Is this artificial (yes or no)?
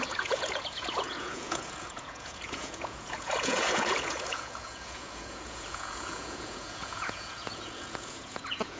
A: yes